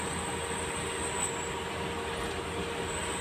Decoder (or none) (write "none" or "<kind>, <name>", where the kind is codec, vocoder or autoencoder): none